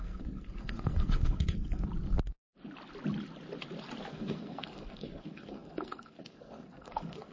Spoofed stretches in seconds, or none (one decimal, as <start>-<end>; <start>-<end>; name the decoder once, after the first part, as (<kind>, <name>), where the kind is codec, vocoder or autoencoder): 0.0-1.9 (codec, SNAC); 4.1-7.3